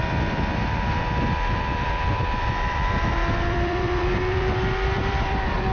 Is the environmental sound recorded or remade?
remade